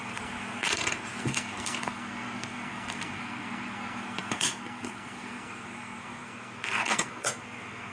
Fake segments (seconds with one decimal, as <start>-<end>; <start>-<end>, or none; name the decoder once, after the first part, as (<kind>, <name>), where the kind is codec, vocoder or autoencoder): 0.0-7.9 (codec, SNAC)